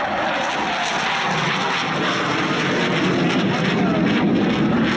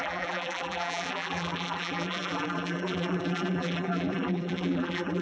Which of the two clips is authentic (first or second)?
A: first